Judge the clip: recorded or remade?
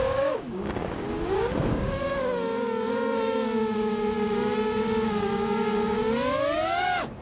remade